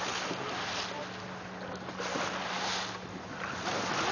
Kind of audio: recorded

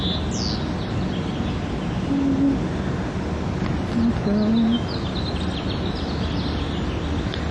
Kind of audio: recorded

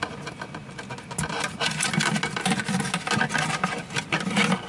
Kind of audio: recorded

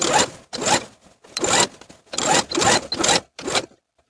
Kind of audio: recorded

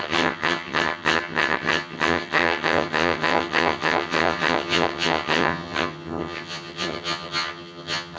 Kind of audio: remade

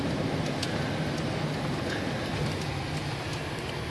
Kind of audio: recorded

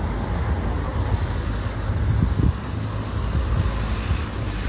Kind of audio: recorded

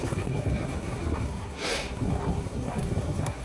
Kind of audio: remade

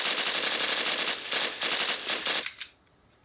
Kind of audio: recorded